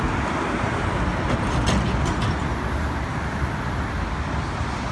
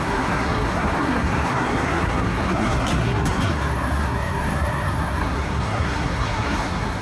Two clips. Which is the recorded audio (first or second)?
first